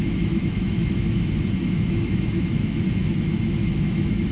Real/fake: fake